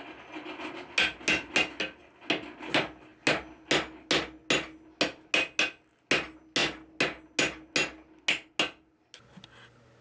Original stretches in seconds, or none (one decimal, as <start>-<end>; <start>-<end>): 0.0-10.0